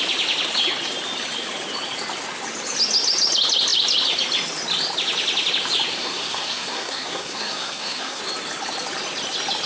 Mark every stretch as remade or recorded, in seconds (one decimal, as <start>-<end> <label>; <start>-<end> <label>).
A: 0.0-6.0 recorded; 6.0-8.2 remade; 8.2-9.7 recorded